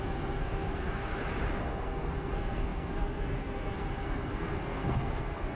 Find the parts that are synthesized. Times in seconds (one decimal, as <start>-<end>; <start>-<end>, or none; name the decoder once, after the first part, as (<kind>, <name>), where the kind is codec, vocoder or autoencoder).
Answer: 0.0-1.1 (codec, SNAC); 1.6-5.5